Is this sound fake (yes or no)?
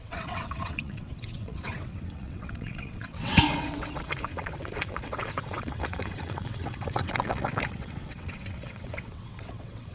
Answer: yes